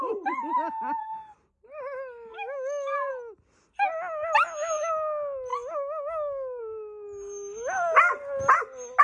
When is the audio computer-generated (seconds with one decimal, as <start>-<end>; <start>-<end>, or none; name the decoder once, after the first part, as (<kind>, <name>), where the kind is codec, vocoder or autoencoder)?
2.3-3.1 (autoencoder, DAC-VAE); 5.5-6.6